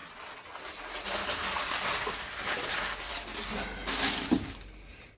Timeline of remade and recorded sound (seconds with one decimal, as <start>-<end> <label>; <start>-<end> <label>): 0.0-5.2 recorded